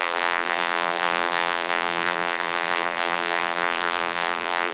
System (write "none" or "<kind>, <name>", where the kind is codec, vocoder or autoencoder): vocoder, BigVGAN v2